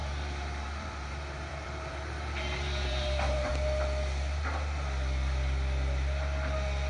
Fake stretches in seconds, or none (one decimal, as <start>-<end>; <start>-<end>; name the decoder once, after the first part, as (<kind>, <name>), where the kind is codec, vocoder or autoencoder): 0.0-3.5 (vocoder, BigVGAN v2)

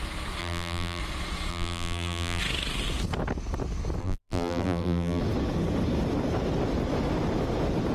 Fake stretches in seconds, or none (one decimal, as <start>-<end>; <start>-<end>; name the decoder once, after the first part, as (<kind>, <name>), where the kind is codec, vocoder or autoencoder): 0.4-1.0 (vocoder, BigVGAN v2); 1.5-2.4; 4.0-5.2

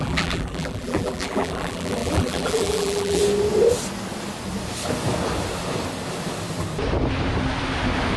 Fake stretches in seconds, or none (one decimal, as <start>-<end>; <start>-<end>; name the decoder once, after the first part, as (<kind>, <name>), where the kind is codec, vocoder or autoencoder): 0.0-3.2 (vocoder, BigVGAN v2)

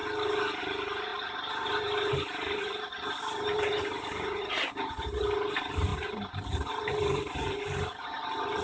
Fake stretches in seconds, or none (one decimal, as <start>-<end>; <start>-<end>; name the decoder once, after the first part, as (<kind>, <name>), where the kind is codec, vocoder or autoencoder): 0.6-8.6 (vocoder, BigVGAN v2)

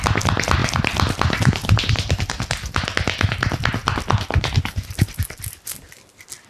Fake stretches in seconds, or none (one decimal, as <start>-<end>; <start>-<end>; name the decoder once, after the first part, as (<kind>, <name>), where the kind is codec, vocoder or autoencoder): none

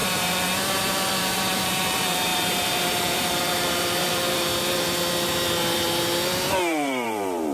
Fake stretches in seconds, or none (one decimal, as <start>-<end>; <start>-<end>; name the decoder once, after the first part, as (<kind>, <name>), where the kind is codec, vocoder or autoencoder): 0.0-4.5 (vocoder, BigVGAN v2); 6.5-7.5

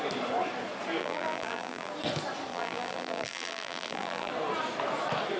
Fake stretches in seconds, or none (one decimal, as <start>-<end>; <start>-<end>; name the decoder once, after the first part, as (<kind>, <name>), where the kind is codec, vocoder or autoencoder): 1.0-1.9 (vocoder, BigVGAN v2); 2.5-4.3

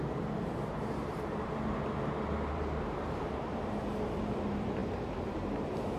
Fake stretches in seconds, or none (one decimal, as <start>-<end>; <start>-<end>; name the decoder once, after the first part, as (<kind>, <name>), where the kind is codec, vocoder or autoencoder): 0.0-6.0 (vocoder, BigVGAN v2)